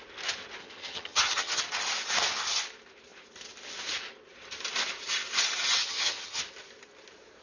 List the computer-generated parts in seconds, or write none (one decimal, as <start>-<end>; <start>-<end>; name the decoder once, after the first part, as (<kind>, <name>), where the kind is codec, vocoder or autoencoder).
0.6-1.6 (vocoder, HiFi-GAN); 5.8-6.4